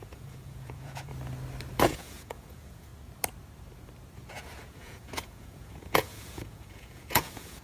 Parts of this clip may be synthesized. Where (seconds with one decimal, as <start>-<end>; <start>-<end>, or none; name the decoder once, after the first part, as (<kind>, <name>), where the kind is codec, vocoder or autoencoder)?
0.0-1.1 (vocoder, Vocos); 1.8-2.9; 4.3-7.6